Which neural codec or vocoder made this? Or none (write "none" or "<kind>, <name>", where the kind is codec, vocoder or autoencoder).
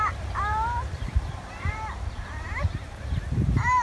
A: vocoder, BigVGAN v2